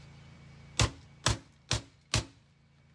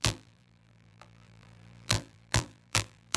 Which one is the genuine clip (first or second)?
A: first